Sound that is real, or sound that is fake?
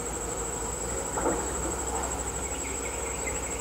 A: real